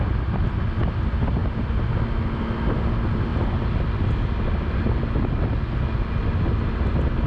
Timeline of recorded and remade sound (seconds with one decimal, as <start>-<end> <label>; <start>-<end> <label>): 0.0-1.4 recorded; 1.4-1.9 remade; 1.9-7.3 recorded